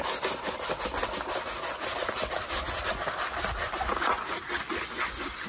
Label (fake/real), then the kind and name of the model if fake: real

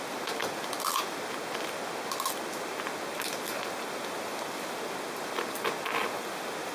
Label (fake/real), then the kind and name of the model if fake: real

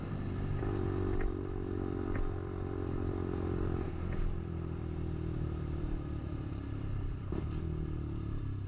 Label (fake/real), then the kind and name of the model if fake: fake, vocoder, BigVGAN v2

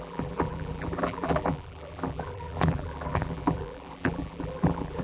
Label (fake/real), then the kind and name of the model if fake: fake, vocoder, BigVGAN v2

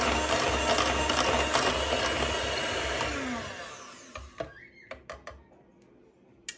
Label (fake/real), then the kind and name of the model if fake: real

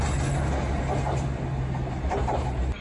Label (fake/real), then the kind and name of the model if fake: real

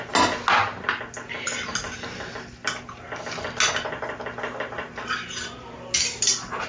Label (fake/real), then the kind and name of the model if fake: real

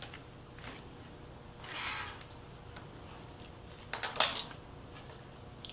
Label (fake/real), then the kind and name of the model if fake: real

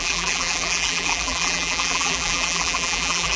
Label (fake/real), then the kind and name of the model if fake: fake, vocoder, BigVGAN v2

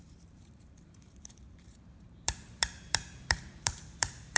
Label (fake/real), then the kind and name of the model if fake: fake, vocoder, BigVGAN v2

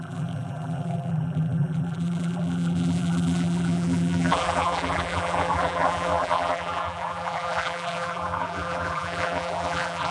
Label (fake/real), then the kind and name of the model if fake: fake, vocoder, BigVGAN v2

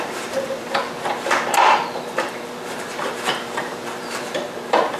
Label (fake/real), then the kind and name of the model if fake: fake, vocoder, BigVGAN v2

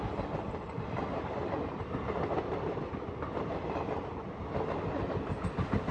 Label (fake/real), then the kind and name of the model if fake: real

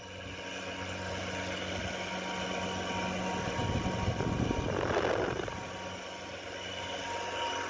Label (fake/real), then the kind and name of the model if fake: real